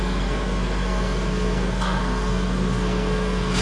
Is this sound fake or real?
fake